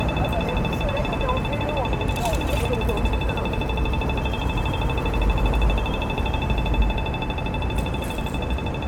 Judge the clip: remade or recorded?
remade